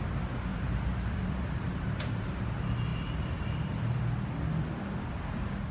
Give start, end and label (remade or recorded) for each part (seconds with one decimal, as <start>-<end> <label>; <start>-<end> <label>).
0.0-0.5 recorded; 0.5-2.4 remade; 2.4-5.7 recorded